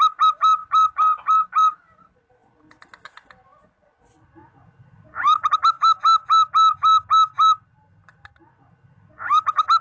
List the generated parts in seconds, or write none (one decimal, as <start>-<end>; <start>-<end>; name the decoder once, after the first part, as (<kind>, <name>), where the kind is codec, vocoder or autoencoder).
none

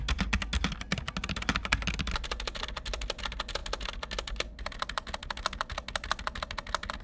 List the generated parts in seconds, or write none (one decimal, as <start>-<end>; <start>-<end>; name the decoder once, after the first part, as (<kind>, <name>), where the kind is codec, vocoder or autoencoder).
none

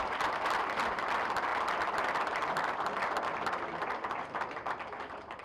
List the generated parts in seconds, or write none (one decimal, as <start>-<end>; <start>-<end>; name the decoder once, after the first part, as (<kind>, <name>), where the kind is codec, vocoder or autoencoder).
none

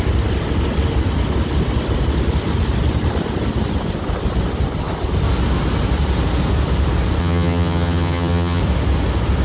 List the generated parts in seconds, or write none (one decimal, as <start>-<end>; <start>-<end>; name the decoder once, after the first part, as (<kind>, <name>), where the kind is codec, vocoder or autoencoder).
7.2-8.6 (vocoder, HiFi-GAN)

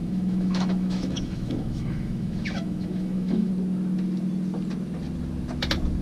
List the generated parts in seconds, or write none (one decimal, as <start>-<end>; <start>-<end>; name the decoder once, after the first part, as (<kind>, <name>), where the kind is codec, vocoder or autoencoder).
0.0-3.5 (autoencoder, DAC-VAE)

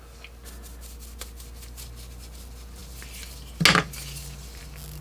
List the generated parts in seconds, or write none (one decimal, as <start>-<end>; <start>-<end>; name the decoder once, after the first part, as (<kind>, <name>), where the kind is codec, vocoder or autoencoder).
none

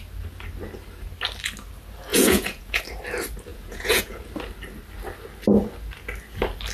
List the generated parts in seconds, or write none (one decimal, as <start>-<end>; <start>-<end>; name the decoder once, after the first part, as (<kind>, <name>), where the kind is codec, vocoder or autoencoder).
2.1-2.8 (vocoder, Vocos); 3.5-4.2

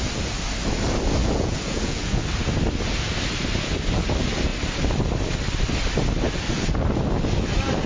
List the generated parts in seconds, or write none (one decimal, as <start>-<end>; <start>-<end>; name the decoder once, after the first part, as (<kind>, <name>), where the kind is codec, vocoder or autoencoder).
1.2-2.2 (vocoder, Vocos)